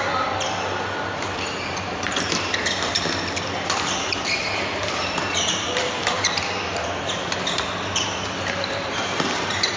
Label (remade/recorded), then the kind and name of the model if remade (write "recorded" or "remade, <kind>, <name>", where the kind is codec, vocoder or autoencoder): remade, vocoder, BigVGAN v2